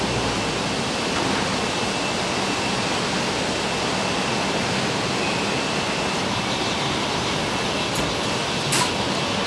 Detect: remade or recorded recorded